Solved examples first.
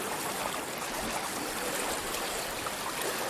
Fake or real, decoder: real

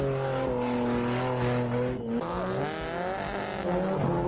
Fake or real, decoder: real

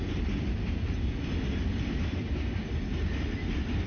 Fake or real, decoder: real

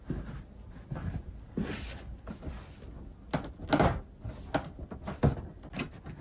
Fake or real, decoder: real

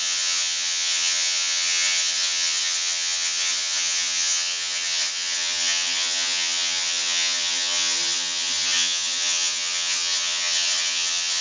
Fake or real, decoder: fake, vocoder, HiFi-GAN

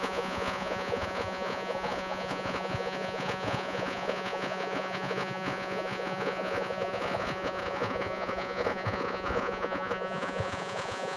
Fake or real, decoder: fake, vocoder, Vocos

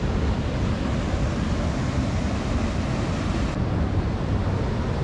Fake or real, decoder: real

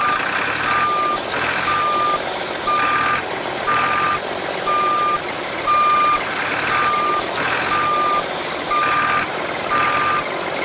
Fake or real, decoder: real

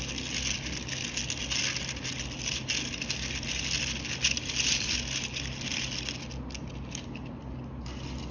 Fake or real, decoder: real